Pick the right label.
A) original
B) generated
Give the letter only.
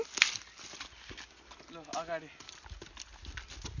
A